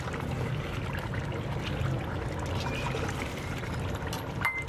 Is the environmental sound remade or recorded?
recorded